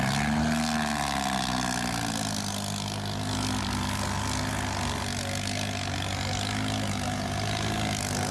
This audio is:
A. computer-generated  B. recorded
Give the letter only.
B